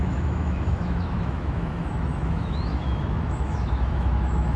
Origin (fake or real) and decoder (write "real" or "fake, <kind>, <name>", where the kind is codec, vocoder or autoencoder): fake, autoencoder, DAC-VAE